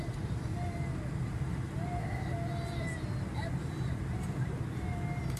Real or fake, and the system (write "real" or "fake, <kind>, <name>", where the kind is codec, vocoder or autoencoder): real